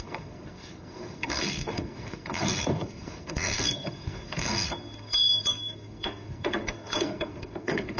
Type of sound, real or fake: fake